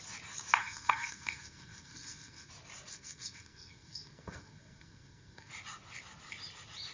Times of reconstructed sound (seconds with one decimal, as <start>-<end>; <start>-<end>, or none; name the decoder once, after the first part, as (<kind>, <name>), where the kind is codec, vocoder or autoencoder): 0.6-2.5 (codec, SNAC); 2.9-5.5